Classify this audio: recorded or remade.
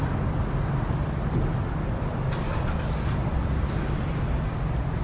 recorded